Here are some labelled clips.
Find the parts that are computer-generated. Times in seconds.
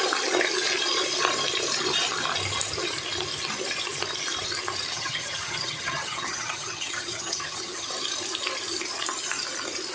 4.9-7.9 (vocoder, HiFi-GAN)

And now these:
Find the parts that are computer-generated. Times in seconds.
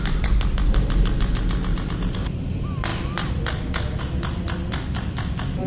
none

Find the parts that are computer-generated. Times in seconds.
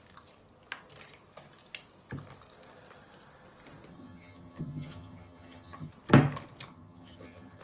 3.9-5.9 (vocoder, HiFi-GAN); 6.7-7.6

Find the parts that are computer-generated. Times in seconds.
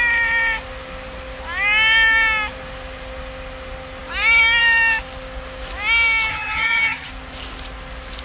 6.3-7.1 (vocoder, HiFi-GAN)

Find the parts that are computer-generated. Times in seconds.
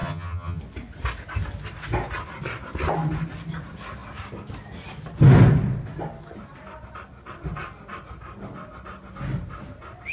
0.0-0.6 (vocoder, HiFi-GAN)